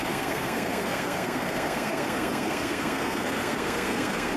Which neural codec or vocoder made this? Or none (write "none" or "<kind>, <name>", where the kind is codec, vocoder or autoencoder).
codec, SNAC